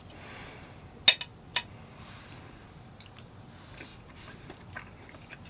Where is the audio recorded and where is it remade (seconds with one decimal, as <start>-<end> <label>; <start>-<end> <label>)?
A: 0.0-1.3 recorded; 1.3-2.9 remade; 2.9-3.9 recorded; 3.9-5.5 remade

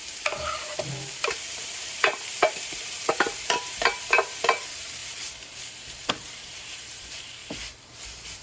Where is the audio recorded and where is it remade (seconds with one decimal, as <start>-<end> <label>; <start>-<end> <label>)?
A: 0.0-7.4 remade; 7.4-8.4 recorded

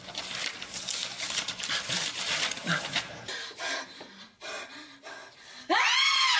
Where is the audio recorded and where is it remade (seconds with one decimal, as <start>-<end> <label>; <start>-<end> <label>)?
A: 0.0-1.0 recorded; 1.0-4.0 remade; 4.0-6.4 recorded

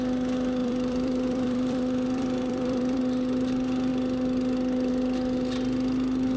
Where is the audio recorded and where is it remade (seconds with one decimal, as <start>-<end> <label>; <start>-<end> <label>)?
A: 0.0-0.6 recorded; 0.6-3.0 remade; 3.0-6.4 recorded